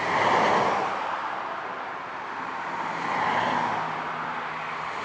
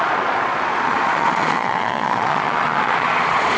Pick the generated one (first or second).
second